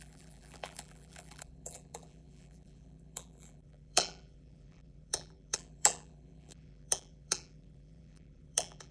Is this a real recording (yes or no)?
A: no